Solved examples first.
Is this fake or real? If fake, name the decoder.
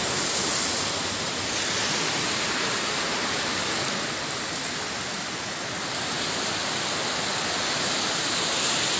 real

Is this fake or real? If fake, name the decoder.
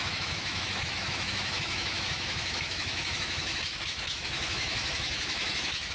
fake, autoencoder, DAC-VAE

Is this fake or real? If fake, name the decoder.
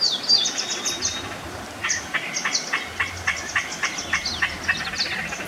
real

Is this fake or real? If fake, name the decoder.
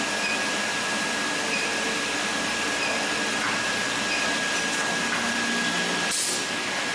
real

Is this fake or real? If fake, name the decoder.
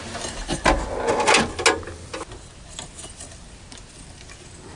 real